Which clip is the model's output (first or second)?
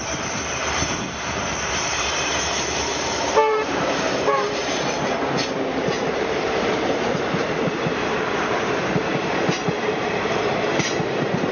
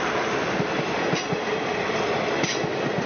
first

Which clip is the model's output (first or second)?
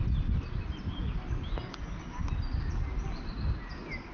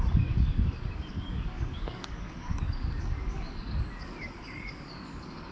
second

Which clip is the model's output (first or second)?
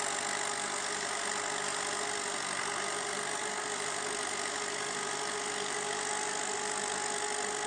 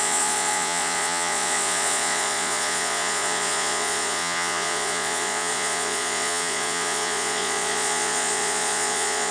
second